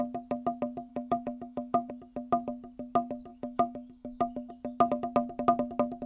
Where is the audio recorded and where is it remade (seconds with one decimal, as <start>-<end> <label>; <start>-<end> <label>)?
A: 0.0-0.9 recorded; 0.9-1.9 remade; 1.9-3.3 recorded; 3.3-4.5 remade; 4.5-6.1 recorded